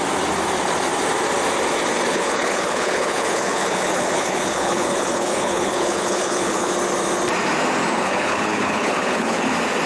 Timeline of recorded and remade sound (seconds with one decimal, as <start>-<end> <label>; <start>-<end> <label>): 0.0-2.1 recorded; 2.1-6.7 remade; 6.7-7.9 recorded; 7.9-9.5 remade; 9.5-9.9 recorded